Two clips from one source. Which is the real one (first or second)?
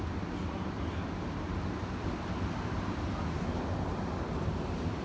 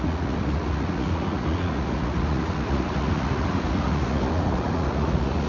first